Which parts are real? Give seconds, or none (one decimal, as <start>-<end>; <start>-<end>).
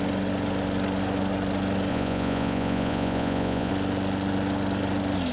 0.0-1.9; 3.7-5.3